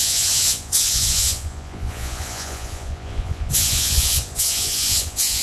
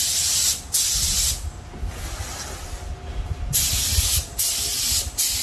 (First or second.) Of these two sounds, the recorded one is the second